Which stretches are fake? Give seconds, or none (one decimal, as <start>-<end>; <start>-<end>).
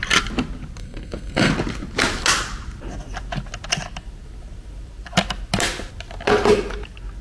0.8-1.5